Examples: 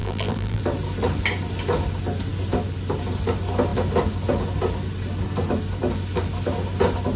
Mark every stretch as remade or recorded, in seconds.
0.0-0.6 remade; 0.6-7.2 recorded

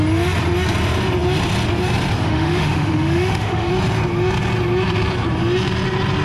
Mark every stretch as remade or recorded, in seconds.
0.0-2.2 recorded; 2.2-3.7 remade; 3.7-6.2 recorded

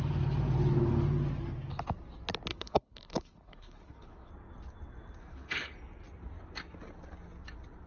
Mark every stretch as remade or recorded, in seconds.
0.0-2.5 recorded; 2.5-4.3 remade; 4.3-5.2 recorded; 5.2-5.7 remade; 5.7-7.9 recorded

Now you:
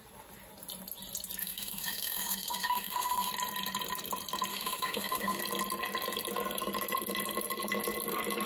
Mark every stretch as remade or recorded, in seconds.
0.0-1.4 recorded; 1.4-3.3 remade; 3.3-4.5 recorded; 4.5-5.4 remade; 5.4-8.5 recorded